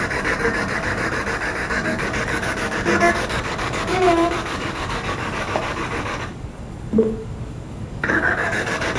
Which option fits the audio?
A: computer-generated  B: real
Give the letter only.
A